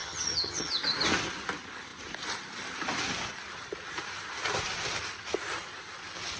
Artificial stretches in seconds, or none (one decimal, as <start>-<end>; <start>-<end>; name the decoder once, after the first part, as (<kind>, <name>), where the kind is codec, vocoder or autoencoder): 0.0-0.7 (vocoder, HiFi-GAN)